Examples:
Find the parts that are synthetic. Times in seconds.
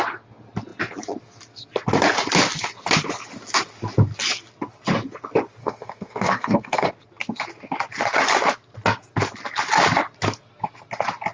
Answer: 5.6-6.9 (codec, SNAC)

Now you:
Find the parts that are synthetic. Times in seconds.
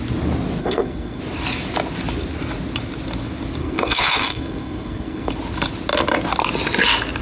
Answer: 0.6-1.2 (codec, SNAC); 3.6-5.3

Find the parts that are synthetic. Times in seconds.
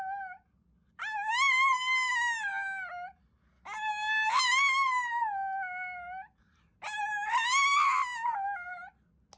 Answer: none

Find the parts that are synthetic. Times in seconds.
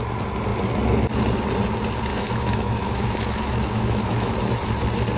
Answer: 2.1-4.4 (autoencoder, DAC-VAE)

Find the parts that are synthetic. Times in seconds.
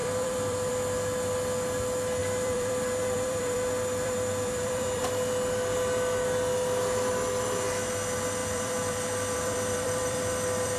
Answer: 0.0-0.7 (vocoder, BigVGAN v2); 2.2-5.0; 8.4-10.8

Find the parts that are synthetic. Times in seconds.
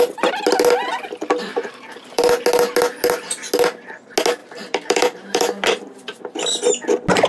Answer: 1.5-2.2 (vocoder, BigVGAN v2); 4.4-6.2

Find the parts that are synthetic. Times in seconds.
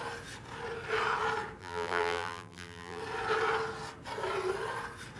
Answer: 1.6-3.0 (vocoder, BigVGAN v2)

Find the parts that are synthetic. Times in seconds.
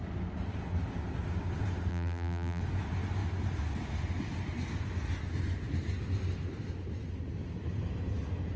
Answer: 1.9-2.6 (vocoder, BigVGAN v2)